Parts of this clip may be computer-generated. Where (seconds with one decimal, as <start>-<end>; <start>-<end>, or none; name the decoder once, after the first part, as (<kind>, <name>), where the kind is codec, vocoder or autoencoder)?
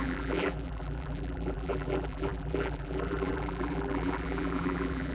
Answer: 0.0-5.1 (vocoder, BigVGAN v2)